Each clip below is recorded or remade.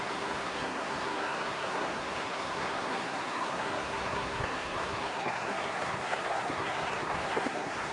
remade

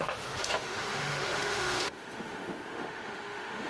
remade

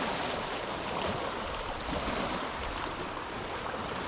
remade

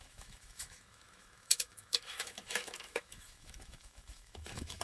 remade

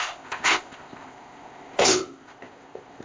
remade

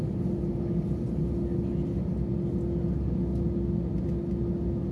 recorded